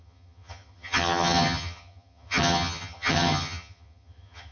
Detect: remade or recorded remade